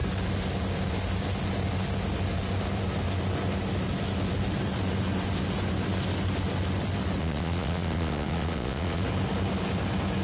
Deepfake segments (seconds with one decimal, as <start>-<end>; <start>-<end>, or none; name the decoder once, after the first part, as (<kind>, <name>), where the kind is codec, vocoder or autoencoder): 7.2-9.0 (vocoder, Vocos)